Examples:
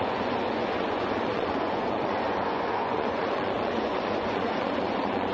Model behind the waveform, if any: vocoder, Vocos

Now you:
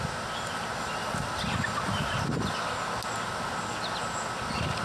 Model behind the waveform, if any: none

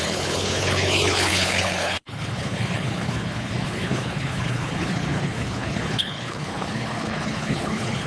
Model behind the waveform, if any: codec, HILCodec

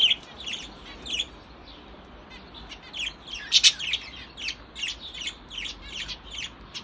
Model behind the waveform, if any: none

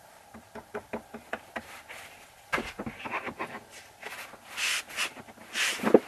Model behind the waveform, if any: none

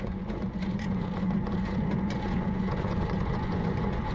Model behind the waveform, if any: vocoder, Vocos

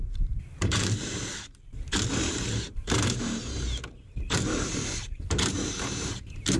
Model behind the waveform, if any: vocoder, BigVGAN v2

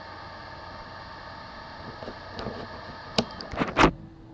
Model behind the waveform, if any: none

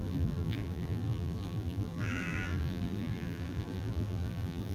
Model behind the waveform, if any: vocoder, BigVGAN v2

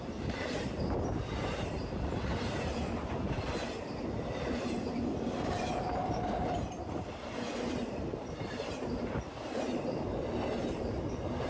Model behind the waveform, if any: vocoder, BigVGAN v2